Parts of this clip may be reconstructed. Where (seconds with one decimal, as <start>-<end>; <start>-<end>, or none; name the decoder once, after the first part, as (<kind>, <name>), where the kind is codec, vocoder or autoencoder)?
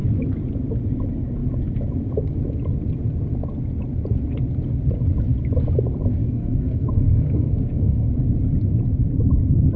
6.2-8.1 (codec, SNAC)